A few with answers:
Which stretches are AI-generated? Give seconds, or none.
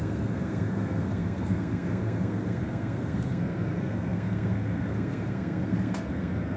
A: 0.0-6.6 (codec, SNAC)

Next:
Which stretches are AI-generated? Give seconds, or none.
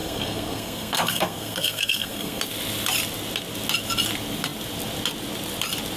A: 0.0-2.4 (codec, SNAC)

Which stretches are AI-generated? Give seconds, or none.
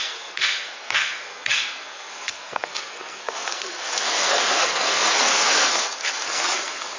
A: 0.0-7.0 (codec, SNAC)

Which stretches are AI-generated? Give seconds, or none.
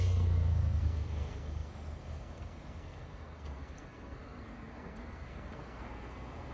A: 0.0-6.5 (codec, SNAC)